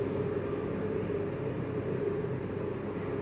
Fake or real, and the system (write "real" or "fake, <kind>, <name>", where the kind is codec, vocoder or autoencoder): real